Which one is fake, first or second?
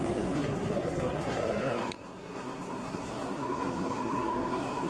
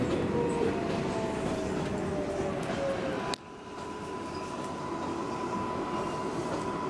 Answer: first